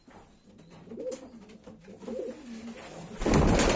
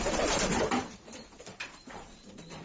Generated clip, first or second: second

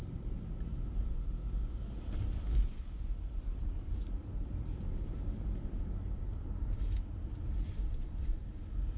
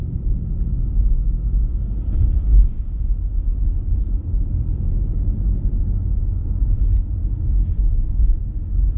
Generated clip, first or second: first